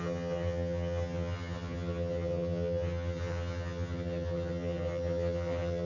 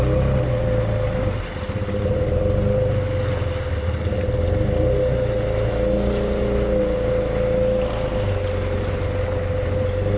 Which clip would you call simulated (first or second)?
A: first